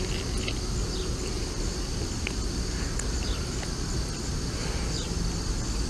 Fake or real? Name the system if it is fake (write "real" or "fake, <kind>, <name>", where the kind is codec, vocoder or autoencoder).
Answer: real